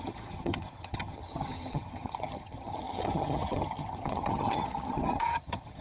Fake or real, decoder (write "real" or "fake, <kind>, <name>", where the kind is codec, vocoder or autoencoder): fake, vocoder, HiFi-GAN